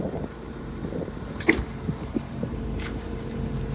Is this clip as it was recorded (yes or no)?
no